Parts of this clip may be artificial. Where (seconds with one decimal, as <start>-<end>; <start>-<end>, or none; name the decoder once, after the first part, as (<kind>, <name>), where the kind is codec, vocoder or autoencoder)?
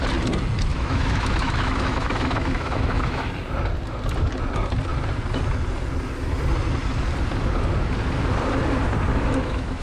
0.7-3.3 (autoencoder, DAC-VAE); 9.1-9.8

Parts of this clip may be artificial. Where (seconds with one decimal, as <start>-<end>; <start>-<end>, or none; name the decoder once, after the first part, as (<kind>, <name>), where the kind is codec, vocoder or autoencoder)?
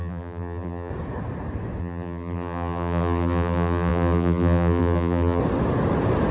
0.0-0.9 (vocoder, BigVGAN v2); 1.8-5.4